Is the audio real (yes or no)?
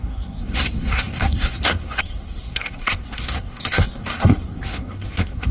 no